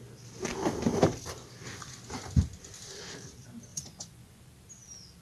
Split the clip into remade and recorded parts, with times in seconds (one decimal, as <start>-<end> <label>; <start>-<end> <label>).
0.0-3.7 recorded; 3.7-4.5 remade; 4.5-5.2 recorded